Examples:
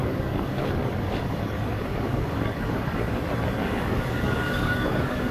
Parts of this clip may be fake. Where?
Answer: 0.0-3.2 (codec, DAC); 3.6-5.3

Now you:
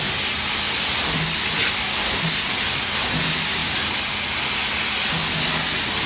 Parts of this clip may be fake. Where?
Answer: none

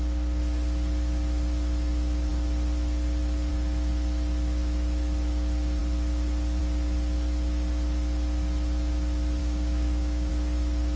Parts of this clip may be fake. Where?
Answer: 9.4-10.3 (codec, DAC)

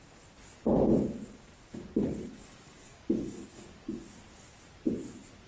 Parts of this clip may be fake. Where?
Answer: 2.3-4.0 (codec, DAC)

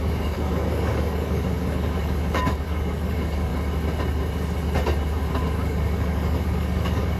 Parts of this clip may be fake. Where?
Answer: 0.0-3.5 (codec, DAC); 5.3-7.2

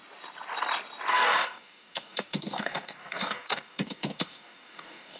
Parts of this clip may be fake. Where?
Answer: 1.1-5.2 (codec, DAC)

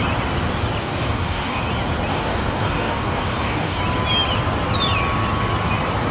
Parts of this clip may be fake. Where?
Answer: 0.8-1.6 (codec, DAC); 2.1-3.8

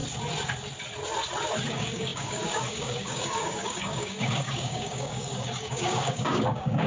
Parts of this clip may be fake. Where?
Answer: 1.7-6.9 (codec, DAC)